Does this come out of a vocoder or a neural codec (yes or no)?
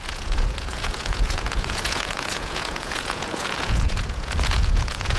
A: yes